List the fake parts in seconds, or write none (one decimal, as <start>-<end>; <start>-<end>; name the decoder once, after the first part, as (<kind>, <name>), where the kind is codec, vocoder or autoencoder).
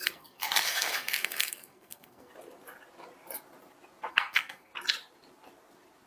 0.0-2.3 (codec, SNAC); 4.1-4.7